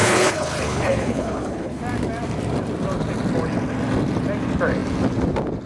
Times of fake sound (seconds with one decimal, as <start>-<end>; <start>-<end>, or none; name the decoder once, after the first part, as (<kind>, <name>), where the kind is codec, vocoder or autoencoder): 0.0-1.8 (codec, HILCodec)